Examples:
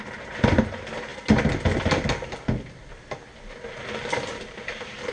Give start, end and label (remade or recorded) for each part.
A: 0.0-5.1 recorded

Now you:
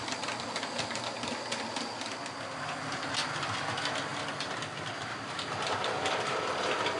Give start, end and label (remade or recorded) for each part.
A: 0.0-7.0 recorded

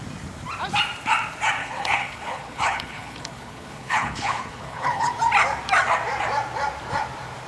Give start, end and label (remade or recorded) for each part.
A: 0.0-1.6 recorded; 1.6-5.1 remade; 5.1-7.5 recorded

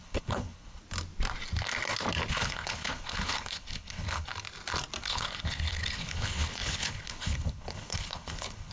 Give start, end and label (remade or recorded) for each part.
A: 0.0-0.8 remade; 0.8-2.3 recorded; 2.3-4.3 remade; 4.3-5.0 recorded; 5.0-8.7 remade

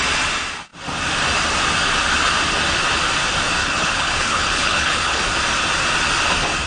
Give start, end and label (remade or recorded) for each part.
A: 0.0-3.6 recorded; 3.6-5.2 remade; 5.2-6.7 recorded